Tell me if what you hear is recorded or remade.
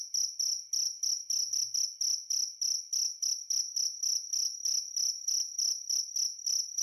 recorded